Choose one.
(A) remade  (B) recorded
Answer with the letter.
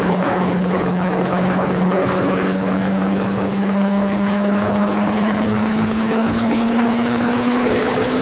A